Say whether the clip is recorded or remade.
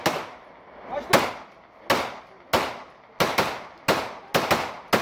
recorded